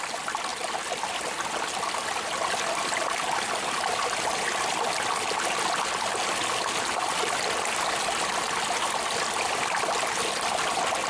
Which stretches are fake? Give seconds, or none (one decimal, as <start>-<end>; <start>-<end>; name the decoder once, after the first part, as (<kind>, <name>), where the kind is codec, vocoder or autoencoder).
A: none